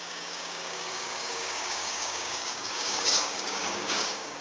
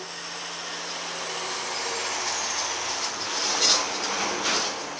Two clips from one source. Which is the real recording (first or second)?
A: second